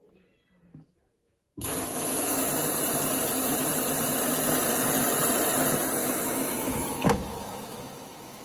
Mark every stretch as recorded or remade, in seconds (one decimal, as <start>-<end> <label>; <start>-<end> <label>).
0.0-0.7 recorded; 0.7-2.5 remade; 2.5-6.0 recorded; 6.0-8.4 remade